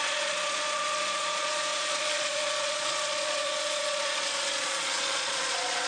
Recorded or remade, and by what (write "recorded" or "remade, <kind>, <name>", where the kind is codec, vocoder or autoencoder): remade, vocoder, Vocos